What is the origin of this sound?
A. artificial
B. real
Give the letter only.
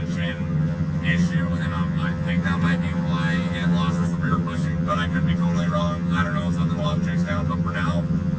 A